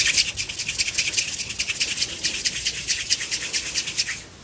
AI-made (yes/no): no